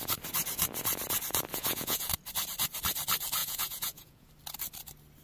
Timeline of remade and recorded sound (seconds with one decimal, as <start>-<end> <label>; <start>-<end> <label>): 0.0-1.5 recorded; 1.5-2.1 remade; 2.1-3.4 recorded; 3.4-4.3 remade; 4.3-5.2 recorded